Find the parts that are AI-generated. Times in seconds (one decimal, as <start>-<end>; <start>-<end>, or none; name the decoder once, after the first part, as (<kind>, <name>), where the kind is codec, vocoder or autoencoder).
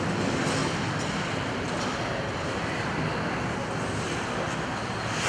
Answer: none